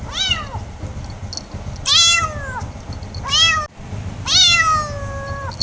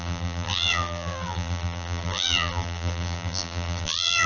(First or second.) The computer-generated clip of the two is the second